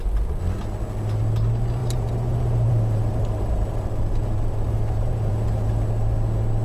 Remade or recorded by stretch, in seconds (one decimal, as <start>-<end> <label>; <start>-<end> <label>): 0.0-1.8 recorded; 1.8-5.7 remade; 5.7-6.6 recorded